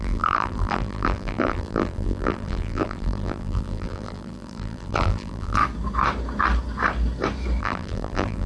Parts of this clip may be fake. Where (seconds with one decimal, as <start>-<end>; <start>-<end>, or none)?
0.0-5.6; 7.6-8.5